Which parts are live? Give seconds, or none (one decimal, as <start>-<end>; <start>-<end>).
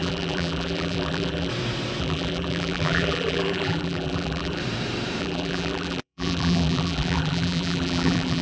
1.5-2.0; 4.6-5.2